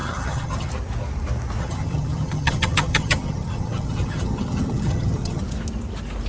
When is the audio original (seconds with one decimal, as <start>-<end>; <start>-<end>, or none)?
0.7-1.6; 5.4-6.3

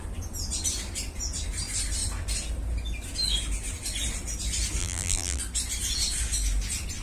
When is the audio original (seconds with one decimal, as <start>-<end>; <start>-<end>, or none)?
0.0-4.8; 5.4-7.0

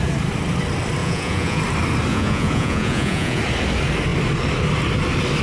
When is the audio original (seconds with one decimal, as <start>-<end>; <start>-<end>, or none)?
0.0-1.0; 1.6-2.1; 3.4-5.4

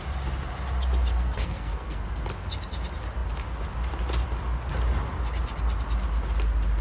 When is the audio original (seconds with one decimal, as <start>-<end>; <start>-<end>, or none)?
0.0-1.1; 2.2-6.8

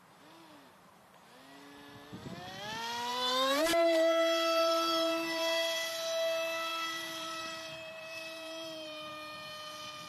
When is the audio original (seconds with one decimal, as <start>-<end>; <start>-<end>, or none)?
0.0-3.1; 5.9-6.7; 9.5-10.1

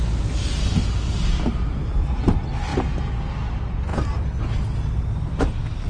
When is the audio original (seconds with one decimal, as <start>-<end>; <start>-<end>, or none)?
0.0-5.9

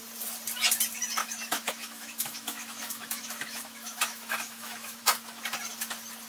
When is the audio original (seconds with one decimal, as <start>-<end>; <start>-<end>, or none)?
0.0-1.2; 5.0-6.3

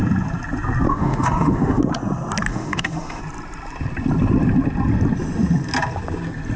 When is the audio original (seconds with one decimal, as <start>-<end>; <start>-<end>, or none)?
0.0-0.9; 1.8-2.5; 3.2-6.6